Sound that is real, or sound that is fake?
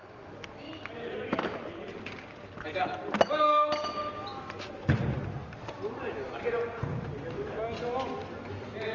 real